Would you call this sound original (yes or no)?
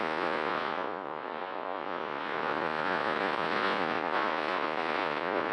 no